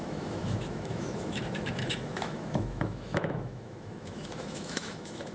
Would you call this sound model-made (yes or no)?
yes